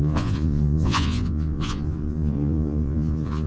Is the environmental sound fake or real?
fake